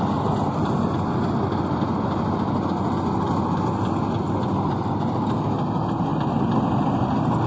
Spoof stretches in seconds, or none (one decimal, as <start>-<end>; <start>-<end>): none